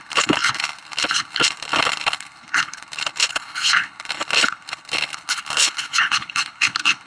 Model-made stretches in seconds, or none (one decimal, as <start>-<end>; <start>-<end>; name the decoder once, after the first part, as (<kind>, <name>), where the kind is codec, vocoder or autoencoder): 0.0-7.1 (codec, HILCodec)